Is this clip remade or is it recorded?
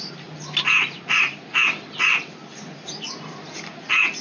recorded